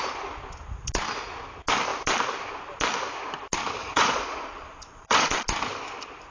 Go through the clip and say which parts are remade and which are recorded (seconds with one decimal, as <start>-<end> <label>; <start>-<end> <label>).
0.0-3.8 recorded; 3.8-5.3 remade; 5.3-6.3 recorded